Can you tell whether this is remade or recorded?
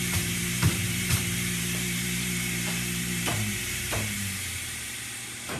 remade